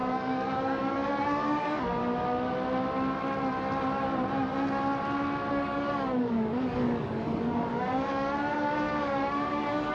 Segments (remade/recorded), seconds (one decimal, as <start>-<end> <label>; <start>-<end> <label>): 0.0-2.0 remade; 2.0-5.5 recorded; 5.5-9.9 remade